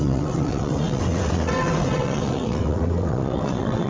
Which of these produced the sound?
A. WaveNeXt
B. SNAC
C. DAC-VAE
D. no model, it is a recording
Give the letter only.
A